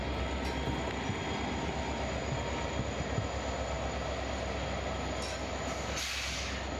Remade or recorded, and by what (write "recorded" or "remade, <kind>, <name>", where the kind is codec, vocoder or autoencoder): recorded